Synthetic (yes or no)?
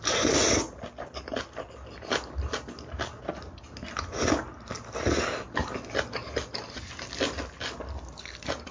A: no